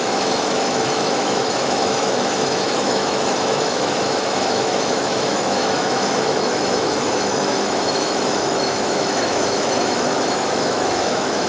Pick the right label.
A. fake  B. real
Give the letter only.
A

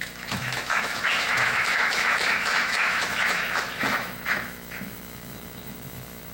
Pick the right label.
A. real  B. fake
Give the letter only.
B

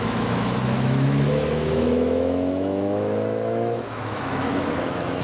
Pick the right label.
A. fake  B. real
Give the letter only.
A